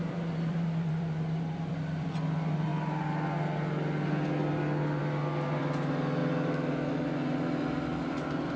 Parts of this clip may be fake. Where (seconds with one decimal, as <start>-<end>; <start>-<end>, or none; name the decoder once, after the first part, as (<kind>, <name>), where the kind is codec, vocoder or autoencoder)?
0.0-2.7 (vocoder, BigVGAN v2); 5.0-6.2; 7.9-8.6